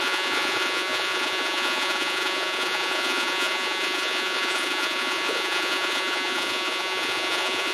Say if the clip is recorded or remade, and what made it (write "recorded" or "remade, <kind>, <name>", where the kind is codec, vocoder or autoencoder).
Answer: remade, vocoder, Vocos